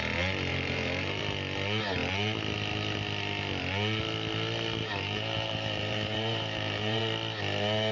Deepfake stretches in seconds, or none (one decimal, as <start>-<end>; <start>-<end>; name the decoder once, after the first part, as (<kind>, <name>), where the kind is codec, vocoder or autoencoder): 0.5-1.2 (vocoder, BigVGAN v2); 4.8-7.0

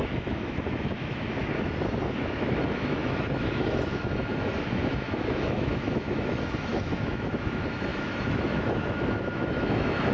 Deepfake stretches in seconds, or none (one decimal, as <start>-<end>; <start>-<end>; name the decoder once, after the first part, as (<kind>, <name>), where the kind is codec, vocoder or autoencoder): 0.0-1.4 (autoencoder, DAC-VAE); 2.2-10.1

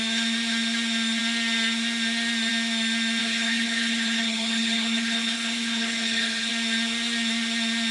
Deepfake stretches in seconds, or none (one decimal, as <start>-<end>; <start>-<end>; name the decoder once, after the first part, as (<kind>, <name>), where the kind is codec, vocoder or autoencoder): 3.2-6.5 (codec, HILCodec)

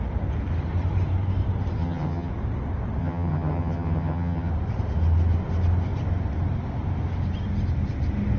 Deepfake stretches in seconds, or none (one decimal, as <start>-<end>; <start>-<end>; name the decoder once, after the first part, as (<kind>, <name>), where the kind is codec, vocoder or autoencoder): 1.8-2.3 (vocoder, HiFi-GAN); 3.0-4.5